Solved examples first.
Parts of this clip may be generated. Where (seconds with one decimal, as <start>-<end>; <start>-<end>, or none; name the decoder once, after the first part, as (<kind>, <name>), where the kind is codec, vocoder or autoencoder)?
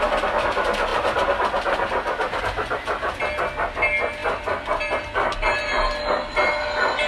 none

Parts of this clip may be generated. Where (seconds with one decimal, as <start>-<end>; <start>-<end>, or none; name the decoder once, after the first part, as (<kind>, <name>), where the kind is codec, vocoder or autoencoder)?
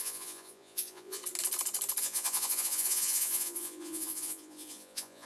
0.0-1.2 (vocoder, Vocos); 2.0-5.3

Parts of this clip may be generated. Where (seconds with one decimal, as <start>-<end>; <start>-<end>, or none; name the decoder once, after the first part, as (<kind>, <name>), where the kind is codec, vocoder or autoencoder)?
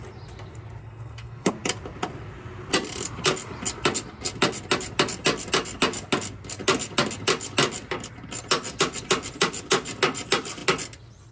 0.8-1.5 (codec, SNAC)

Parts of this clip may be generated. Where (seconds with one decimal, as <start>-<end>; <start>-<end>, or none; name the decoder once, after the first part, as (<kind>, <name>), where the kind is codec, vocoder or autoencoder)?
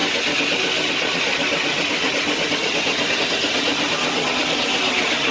none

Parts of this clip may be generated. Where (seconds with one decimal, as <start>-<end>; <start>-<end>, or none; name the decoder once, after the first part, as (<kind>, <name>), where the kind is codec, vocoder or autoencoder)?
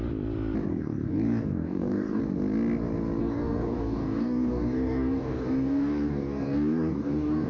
0.7-2.2 (codec, DAC); 3.2-7.5